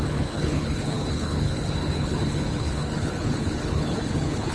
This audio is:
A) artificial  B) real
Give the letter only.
A